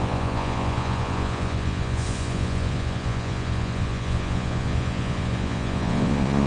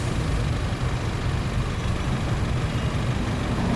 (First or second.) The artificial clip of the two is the first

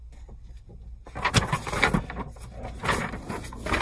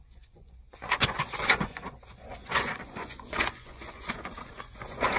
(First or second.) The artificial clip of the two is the second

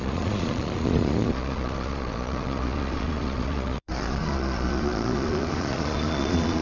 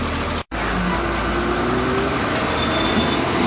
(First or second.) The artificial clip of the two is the first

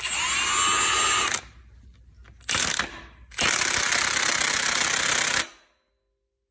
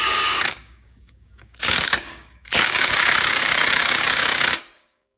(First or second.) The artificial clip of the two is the second